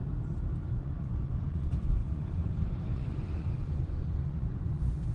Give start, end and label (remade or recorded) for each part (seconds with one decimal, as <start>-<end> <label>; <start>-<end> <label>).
0.0-0.7 recorded; 0.7-5.1 remade